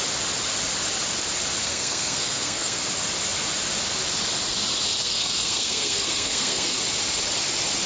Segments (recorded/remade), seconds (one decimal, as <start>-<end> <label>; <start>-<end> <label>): 0.0-1.6 recorded; 1.6-2.8 remade; 2.8-5.0 recorded; 5.0-6.8 remade; 6.8-7.9 recorded